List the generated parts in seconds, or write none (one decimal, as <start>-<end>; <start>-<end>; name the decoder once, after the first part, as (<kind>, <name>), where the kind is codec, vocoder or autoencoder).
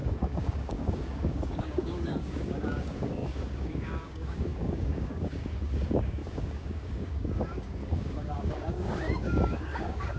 0.0-10.2 (codec, DAC)